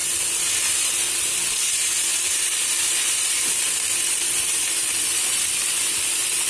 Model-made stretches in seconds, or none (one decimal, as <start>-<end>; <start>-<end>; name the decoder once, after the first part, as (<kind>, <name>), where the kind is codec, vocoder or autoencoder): none